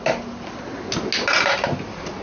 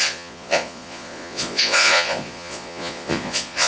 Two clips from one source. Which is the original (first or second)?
first